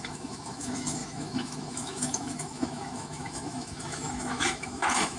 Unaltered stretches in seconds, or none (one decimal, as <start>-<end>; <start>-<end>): none